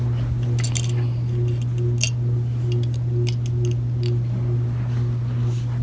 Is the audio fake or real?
real